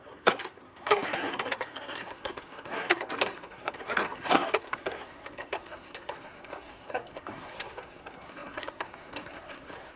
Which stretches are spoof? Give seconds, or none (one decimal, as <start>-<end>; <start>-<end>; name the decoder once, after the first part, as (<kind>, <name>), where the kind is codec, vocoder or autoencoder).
0.0-10.0 (codec, SNAC)